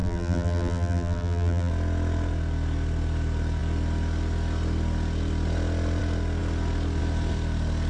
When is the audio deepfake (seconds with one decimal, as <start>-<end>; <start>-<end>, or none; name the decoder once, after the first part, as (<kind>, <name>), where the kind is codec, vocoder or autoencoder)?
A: 0.0-1.7 (vocoder, BigVGAN v2)